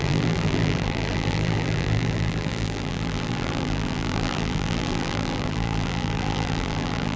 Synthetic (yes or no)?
yes